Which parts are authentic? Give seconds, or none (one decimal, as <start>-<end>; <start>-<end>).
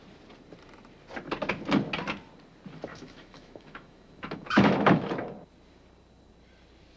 0.0-2.9; 5.1-7.0